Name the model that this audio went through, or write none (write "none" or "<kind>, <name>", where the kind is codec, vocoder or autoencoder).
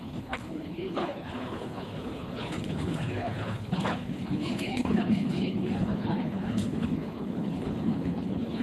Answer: codec, HILCodec